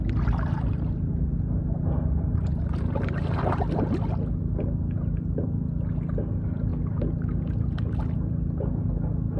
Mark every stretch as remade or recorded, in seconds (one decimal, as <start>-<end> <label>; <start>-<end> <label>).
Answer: 0.0-9.4 recorded